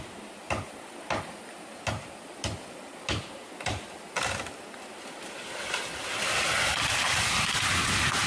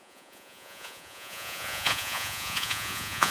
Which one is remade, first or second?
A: second